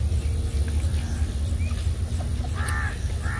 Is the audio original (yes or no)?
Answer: yes